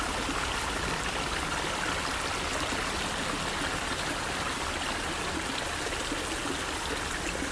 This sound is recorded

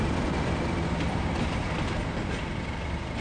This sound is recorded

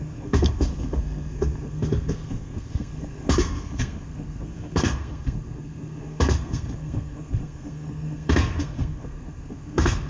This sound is remade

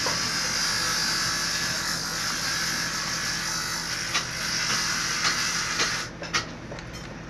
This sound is recorded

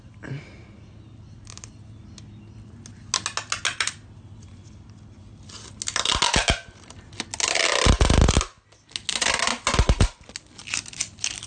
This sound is recorded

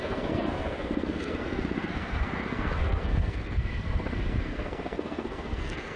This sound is remade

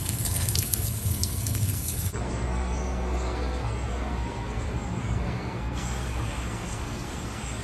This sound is remade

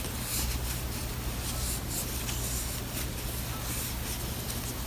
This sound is recorded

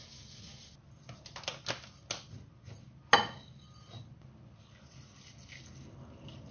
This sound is recorded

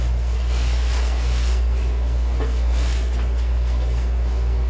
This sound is remade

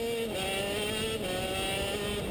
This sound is recorded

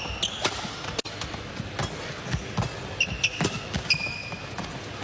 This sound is recorded